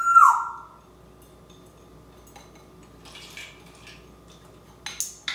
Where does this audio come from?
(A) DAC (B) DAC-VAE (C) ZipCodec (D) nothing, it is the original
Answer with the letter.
D